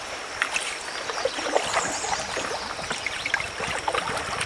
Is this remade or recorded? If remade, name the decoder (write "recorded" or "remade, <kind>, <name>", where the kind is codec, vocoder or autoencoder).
recorded